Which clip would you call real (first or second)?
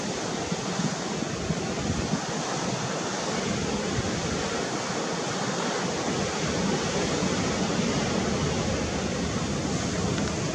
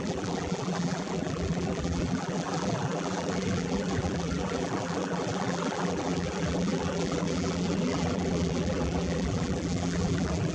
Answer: first